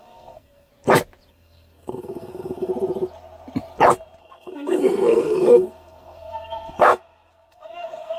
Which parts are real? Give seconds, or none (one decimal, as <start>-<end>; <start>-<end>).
0.7-1.3; 2.7-4.2